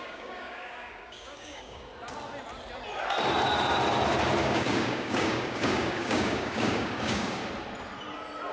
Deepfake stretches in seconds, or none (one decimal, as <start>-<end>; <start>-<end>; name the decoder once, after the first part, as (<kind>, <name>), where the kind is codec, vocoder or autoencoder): 0.0-1.9 (codec, DAC); 4.4-7.4